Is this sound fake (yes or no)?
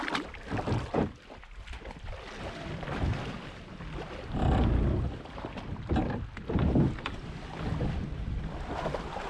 no